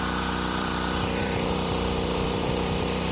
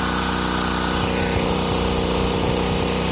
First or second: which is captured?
second